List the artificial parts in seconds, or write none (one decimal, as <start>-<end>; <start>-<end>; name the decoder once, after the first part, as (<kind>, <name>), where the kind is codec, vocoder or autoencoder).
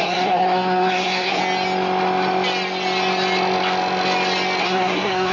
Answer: 0.0-1.4 (codec, SNAC); 4.6-5.3